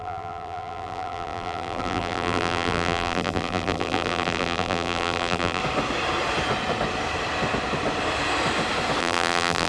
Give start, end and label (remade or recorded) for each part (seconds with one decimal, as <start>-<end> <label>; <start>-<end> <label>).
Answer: 0.0-5.6 remade; 5.6-9.0 recorded; 9.0-9.7 remade